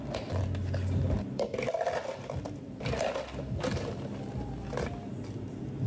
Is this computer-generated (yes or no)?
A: no